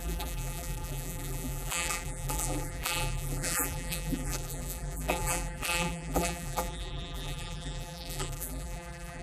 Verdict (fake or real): fake